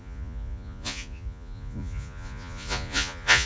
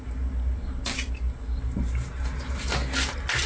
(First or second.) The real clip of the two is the second